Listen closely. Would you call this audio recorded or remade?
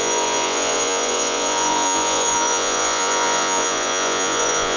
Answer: remade